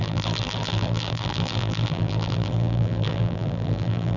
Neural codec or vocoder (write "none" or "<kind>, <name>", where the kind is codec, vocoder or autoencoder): vocoder, BigVGAN v2